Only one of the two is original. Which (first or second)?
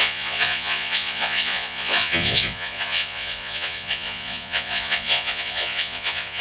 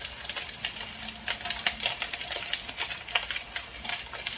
second